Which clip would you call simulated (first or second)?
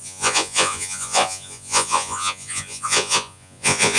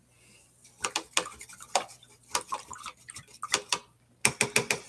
first